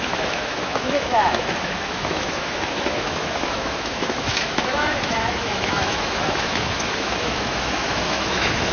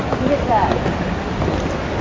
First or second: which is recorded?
second